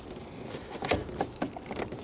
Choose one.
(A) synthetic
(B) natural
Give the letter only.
B